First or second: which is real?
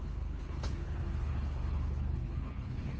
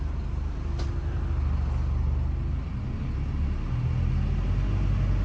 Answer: second